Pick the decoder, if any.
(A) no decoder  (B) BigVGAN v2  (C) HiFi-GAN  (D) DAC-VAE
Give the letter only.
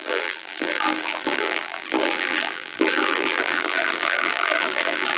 B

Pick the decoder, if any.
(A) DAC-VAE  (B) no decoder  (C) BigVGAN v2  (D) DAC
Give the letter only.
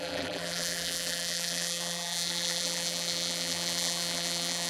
C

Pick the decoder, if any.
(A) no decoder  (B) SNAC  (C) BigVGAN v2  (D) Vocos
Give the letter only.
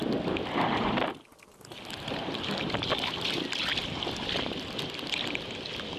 A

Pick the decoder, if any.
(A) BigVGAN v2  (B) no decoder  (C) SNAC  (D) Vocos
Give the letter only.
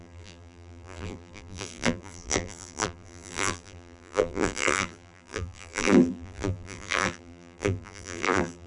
A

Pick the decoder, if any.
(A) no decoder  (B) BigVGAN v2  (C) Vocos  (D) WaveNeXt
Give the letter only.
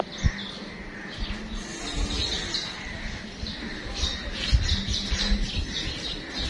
A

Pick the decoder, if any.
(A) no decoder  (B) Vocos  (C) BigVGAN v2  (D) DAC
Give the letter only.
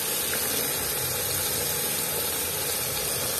A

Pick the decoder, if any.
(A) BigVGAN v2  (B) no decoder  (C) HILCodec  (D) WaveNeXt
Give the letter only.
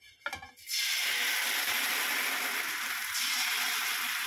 B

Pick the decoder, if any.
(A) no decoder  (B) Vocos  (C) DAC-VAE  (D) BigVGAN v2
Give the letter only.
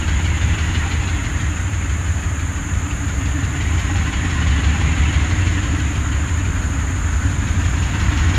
D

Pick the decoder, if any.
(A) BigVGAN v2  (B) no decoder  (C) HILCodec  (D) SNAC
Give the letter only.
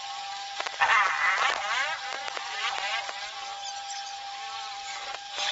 A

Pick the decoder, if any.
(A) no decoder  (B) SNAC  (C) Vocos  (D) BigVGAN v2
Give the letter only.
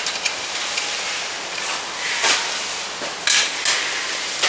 A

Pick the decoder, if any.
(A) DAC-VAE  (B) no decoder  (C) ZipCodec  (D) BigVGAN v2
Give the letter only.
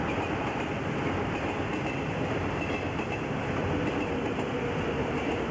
B